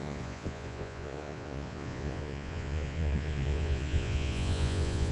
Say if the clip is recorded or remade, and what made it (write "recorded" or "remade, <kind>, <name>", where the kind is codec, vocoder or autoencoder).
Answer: remade, vocoder, Vocos